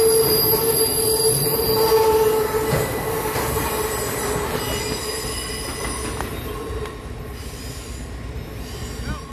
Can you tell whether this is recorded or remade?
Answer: recorded